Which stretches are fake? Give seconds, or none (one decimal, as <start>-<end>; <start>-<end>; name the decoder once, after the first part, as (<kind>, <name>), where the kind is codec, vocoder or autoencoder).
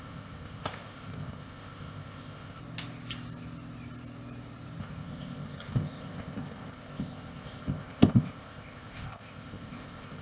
0.0-2.6 (codec, ZipCodec); 4.8-10.2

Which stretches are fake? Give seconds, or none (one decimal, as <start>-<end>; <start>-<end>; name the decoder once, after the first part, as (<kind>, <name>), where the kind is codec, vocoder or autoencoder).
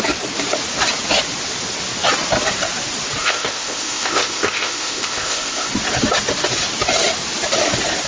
3.2-5.7 (codec, ZipCodec)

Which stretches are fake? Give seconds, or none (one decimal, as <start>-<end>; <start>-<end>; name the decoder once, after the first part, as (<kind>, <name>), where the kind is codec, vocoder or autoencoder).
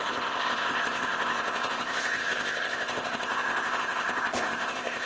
0.0-5.1 (codec, ZipCodec)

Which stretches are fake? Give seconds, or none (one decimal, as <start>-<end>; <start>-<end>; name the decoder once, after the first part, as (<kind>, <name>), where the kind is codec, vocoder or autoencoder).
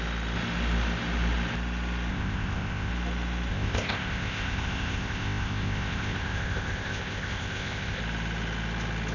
2.1-2.9 (codec, ZipCodec); 3.5-8.0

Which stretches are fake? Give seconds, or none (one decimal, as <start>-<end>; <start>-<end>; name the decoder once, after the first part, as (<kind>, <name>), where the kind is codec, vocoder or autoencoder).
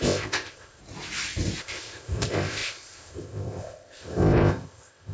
0.0-0.8 (codec, ZipCodec); 1.6-5.1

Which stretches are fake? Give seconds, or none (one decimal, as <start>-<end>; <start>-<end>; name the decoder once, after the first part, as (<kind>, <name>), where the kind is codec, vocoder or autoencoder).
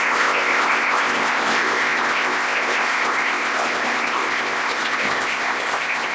0.0-6.1 (codec, ZipCodec)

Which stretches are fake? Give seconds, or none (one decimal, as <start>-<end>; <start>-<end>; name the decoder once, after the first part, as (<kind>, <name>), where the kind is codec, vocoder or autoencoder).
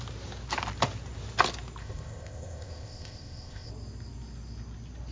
1.8-3.7 (codec, ZipCodec)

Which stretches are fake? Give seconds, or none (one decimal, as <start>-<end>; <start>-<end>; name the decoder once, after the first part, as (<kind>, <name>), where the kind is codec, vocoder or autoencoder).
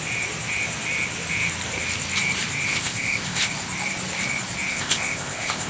2.7-3.5 (codec, ZipCodec); 4.7-5.7